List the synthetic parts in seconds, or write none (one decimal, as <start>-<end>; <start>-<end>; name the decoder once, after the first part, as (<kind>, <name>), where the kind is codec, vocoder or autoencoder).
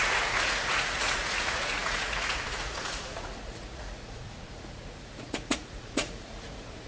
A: 0.0-6.9 (vocoder, Vocos)